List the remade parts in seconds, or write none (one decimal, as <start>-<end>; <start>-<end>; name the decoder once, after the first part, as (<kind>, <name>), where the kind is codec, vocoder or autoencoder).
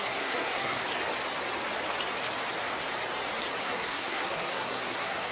0.0-0.8 (codec, SNAC); 3.6-5.3